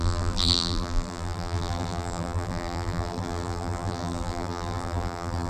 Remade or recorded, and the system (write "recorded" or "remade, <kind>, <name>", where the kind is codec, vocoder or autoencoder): remade, vocoder, BigVGAN v2